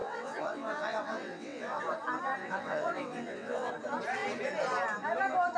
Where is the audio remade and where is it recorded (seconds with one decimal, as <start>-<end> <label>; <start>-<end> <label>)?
0.0-1.8 remade; 1.8-2.4 recorded; 2.4-3.7 remade; 3.7-5.6 recorded